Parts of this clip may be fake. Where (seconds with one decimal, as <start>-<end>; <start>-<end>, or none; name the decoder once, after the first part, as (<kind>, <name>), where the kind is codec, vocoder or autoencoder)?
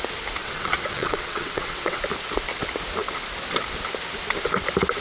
0.4-2.0 (vocoder, WaveNeXt)